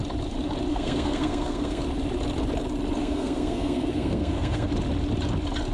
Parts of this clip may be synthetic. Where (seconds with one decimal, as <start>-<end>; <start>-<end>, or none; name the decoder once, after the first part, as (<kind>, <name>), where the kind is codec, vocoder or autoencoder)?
0.7-1.8 (codec, SNAC); 3.0-4.7